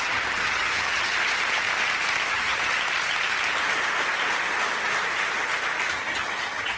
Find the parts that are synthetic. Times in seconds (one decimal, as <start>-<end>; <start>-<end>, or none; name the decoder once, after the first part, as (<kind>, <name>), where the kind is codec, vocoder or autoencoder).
0.0-1.1 (vocoder, HiFi-GAN); 2.3-2.7; 5.9-6.8